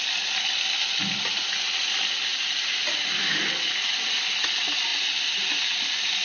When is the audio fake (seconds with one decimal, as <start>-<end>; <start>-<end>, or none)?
none